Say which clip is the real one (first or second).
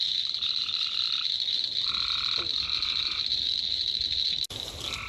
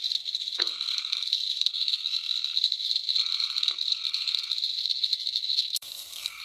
first